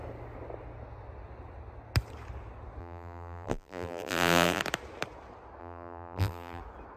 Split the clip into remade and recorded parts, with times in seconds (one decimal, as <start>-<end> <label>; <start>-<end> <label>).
0.0-2.8 recorded; 2.8-4.6 remade; 4.6-5.6 recorded; 5.6-6.6 remade; 6.6-7.0 recorded